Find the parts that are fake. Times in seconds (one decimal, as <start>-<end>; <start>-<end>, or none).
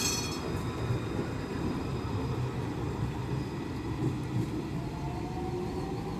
1.5-4.1